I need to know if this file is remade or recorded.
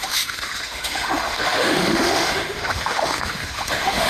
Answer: remade